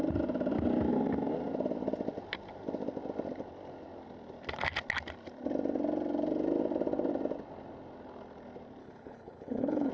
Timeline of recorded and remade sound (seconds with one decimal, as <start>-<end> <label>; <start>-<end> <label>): 0.0-8.8 recorded; 8.8-9.9 remade

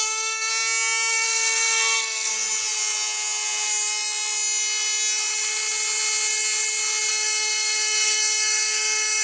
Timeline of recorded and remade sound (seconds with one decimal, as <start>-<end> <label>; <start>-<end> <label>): 0.0-0.5 remade; 0.5-1.1 recorded; 1.1-2.3 remade; 2.3-7.1 recorded; 7.1-9.2 remade

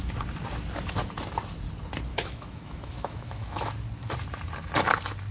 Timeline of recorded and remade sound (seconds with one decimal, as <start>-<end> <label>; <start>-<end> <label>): 0.0-2.1 recorded; 2.1-3.7 remade; 3.7-5.3 recorded

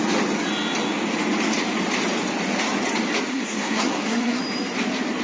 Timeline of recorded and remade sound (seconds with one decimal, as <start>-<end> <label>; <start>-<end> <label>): 0.0-3.3 recorded; 3.3-4.4 remade; 4.4-5.2 recorded

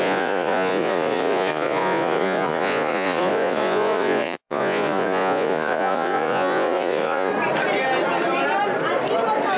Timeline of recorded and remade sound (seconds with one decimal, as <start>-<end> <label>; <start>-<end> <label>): 0.0-7.3 remade; 7.3-9.6 recorded